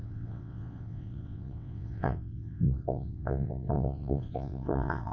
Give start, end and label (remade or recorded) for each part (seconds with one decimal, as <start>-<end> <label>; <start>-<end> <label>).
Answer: 0.0-5.1 remade